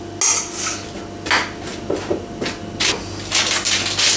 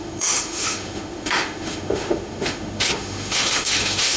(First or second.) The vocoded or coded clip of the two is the second